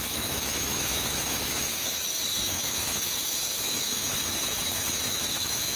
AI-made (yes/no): yes